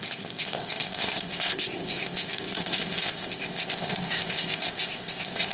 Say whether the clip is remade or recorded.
remade